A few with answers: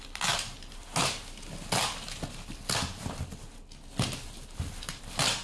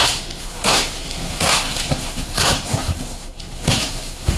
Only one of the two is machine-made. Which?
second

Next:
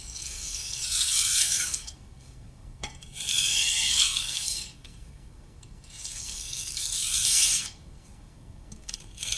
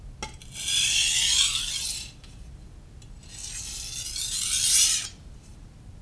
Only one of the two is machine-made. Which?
first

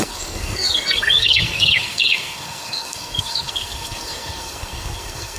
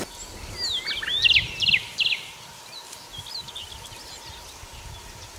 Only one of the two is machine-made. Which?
first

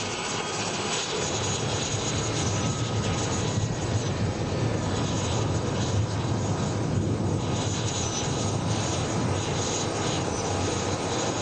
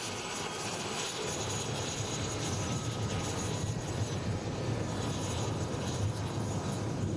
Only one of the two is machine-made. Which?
second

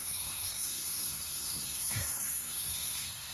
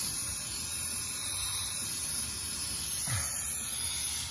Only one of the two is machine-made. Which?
first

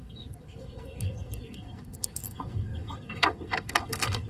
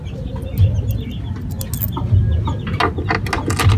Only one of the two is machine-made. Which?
first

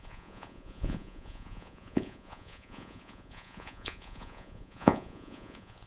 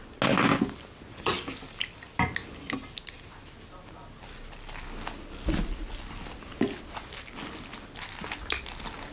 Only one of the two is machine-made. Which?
first